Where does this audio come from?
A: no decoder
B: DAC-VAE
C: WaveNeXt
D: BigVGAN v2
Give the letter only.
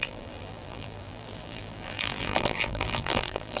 D